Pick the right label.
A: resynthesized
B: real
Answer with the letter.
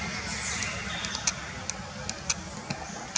B